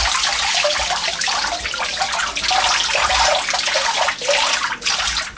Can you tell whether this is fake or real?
real